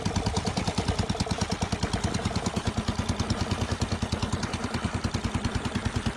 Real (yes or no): yes